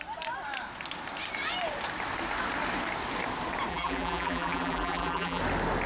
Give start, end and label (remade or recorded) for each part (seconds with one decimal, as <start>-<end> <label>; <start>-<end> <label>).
0.0-3.7 recorded; 3.7-5.4 remade; 5.4-5.9 recorded